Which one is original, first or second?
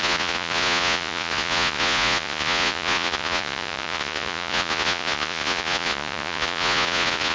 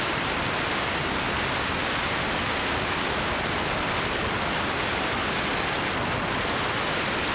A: second